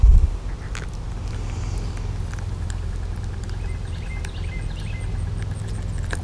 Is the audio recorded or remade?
recorded